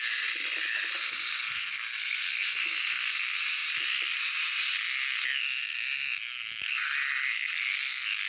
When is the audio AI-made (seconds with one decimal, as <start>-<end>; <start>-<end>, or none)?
1.0-3.2